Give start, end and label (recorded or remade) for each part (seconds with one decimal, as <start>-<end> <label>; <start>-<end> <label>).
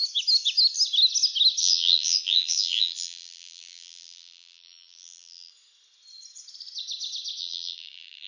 0.0-1.6 recorded; 1.6-5.5 remade; 5.5-7.4 recorded; 7.4-8.3 remade